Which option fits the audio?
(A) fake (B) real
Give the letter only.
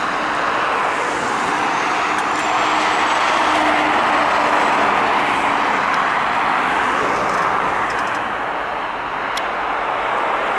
B